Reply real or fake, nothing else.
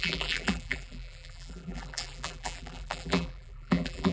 fake